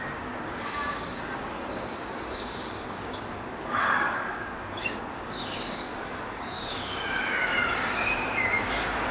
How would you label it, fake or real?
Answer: fake